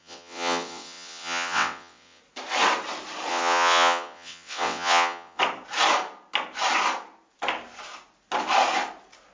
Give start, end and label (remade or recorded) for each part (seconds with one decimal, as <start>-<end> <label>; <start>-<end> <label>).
0.0-2.2 remade; 2.2-3.3 recorded; 3.3-5.4 remade; 5.4-9.3 recorded